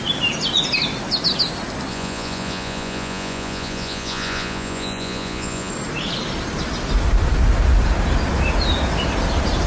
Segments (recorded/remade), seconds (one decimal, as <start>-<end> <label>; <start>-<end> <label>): 0.0-1.9 recorded; 1.9-5.7 remade; 5.7-9.7 recorded

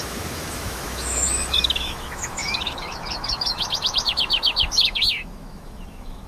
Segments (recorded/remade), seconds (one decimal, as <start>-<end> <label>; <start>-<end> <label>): 0.0-6.3 remade

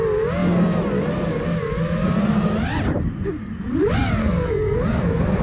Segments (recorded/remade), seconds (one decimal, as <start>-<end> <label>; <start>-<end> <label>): 0.0-4.2 recorded; 4.2-4.8 remade; 4.8-5.4 recorded